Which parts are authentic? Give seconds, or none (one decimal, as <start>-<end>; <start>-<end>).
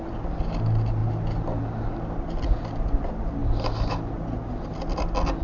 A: 0.0-5.4